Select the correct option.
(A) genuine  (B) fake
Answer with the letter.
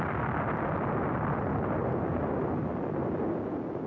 A